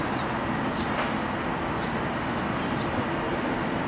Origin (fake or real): real